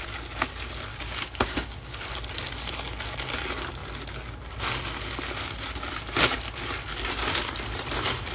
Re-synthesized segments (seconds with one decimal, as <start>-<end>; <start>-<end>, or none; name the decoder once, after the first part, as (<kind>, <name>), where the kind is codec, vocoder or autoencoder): 0.9-2.0 (codec, DAC)